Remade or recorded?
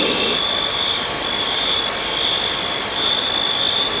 recorded